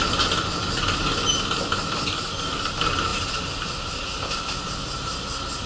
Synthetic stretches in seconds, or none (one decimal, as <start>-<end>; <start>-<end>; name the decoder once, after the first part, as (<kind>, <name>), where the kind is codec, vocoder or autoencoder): none